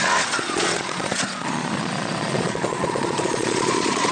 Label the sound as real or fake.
fake